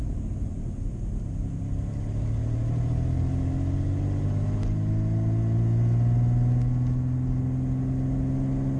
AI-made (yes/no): no